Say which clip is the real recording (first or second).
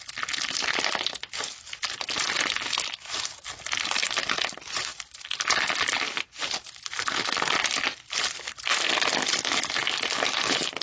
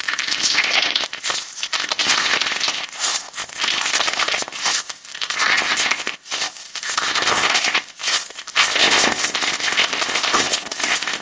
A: first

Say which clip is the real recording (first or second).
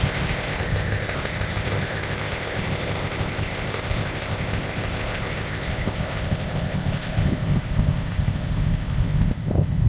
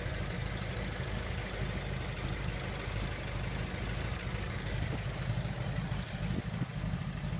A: second